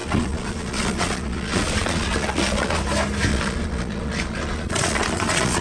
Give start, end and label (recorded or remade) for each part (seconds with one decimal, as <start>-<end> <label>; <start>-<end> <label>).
0.0-2.8 remade; 2.8-3.3 recorded; 3.3-5.6 remade